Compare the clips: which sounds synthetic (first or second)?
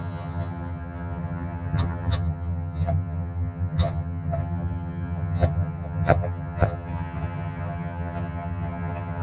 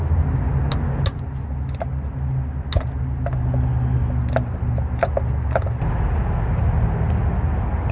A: first